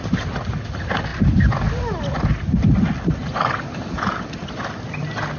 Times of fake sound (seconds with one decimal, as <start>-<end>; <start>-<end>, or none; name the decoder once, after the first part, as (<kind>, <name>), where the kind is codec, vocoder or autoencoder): none